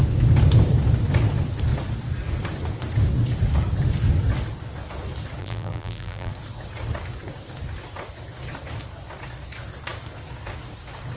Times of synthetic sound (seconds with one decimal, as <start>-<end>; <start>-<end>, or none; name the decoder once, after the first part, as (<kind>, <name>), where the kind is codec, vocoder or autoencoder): 5.4-6.3 (vocoder, BigVGAN v2)